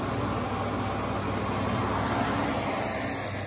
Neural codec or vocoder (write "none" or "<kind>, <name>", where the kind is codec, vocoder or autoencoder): none